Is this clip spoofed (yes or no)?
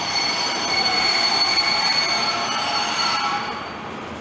yes